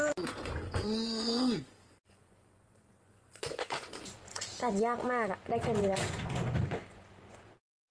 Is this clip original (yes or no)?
no